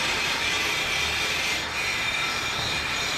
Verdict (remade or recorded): remade